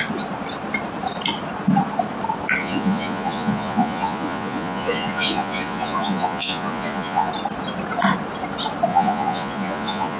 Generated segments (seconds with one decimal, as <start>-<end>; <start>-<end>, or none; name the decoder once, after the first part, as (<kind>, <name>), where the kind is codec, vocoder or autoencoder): 2.6-7.3 (vocoder, Vocos); 8.9-10.2